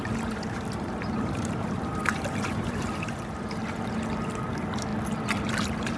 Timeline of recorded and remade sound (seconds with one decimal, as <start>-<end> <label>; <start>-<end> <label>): 0.0-4.9 remade; 4.9-5.6 recorded; 5.6-6.0 remade